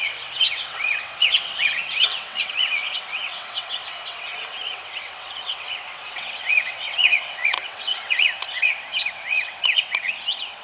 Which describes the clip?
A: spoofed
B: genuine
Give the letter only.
A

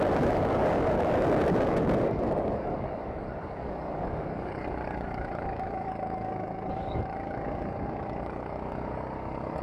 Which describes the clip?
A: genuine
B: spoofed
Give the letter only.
B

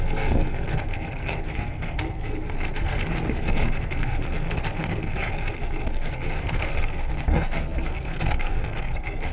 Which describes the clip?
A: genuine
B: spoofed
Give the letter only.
B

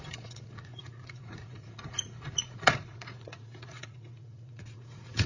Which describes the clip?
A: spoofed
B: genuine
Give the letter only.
A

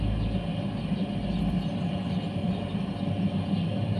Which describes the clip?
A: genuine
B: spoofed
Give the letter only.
A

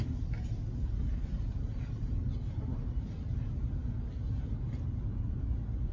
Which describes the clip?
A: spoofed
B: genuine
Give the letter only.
B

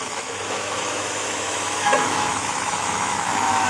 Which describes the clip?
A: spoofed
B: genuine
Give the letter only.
A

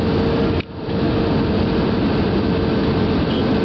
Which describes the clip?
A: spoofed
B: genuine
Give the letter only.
B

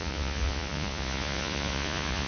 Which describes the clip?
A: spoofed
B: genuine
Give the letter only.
A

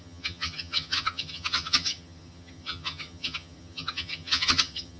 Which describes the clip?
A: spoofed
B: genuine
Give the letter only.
A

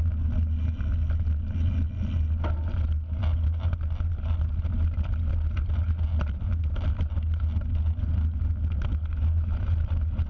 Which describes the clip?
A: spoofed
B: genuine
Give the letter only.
B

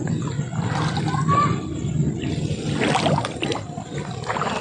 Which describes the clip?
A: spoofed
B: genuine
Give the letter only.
B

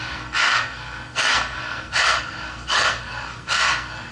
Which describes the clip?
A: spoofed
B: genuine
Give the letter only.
A